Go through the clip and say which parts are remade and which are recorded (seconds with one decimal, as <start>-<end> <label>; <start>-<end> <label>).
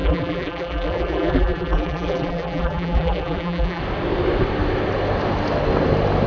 0.0-3.8 remade; 3.8-6.3 recorded